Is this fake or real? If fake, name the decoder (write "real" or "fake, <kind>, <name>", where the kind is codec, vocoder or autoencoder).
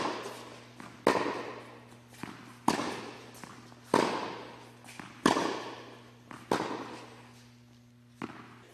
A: real